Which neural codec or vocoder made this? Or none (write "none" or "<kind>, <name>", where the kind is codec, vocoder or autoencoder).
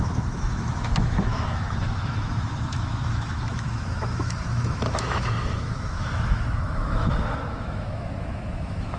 autoencoder, DAC-VAE